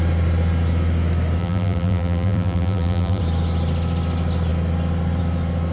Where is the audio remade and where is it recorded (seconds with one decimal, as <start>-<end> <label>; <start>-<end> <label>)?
0.0-1.4 recorded; 1.4-3.2 remade; 3.2-5.7 recorded